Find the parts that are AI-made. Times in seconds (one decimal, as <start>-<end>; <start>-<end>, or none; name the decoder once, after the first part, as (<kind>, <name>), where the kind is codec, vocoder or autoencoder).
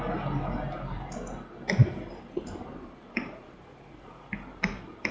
1.8-5.1 (vocoder, BigVGAN v2)